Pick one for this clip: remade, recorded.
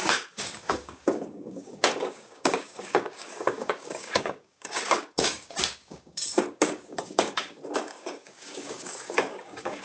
remade